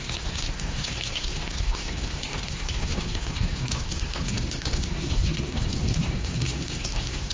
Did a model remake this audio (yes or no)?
yes